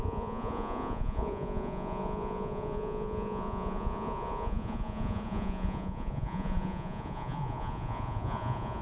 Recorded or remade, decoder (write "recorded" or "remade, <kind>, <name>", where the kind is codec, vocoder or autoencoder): remade, vocoder, Vocos